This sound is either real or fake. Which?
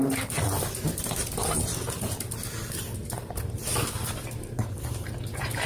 real